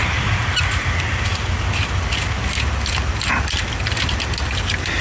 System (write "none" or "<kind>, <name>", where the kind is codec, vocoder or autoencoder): none